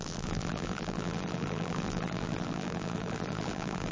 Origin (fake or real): fake